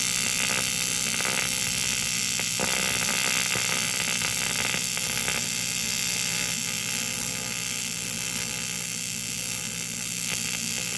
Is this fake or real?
real